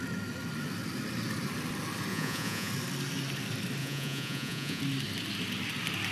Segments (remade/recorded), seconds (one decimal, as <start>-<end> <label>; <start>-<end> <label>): 0.0-2.1 recorded; 2.1-2.7 remade; 2.7-3.8 recorded; 3.8-4.8 remade; 4.8-6.1 recorded

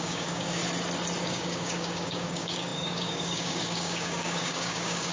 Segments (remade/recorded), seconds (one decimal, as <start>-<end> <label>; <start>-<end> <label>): 0.0-0.6 remade; 0.6-1.2 recorded; 1.2-5.1 remade

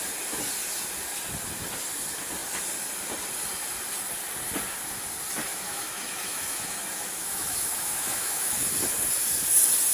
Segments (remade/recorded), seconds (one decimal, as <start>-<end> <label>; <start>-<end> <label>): 0.0-5.5 recorded; 5.5-8.7 remade; 8.7-9.9 recorded

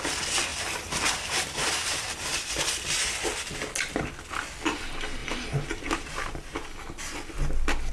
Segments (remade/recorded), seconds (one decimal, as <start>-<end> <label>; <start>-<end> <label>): 0.0-0.5 recorded; 0.5-2.3 remade; 2.3-5.2 recorded; 5.2-6.6 remade; 6.6-7.9 recorded